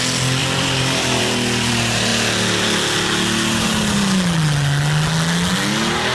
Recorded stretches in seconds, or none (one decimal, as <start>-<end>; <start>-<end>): 0.0-0.4; 1.7-6.1